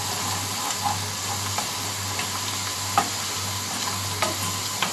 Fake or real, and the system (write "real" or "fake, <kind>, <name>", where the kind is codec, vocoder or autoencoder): real